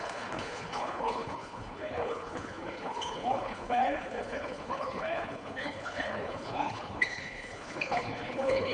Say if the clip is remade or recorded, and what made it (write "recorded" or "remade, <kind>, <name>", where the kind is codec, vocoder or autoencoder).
remade, codec, HILCodec